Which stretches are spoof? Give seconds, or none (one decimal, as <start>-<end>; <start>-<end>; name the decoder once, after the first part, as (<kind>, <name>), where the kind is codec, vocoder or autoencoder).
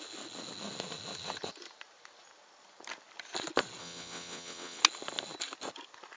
3.8-4.8 (vocoder, WaveNeXt)